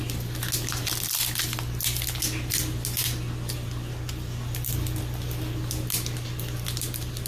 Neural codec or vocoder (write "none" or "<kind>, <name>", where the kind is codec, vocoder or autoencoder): none